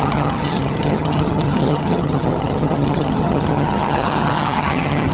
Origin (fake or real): fake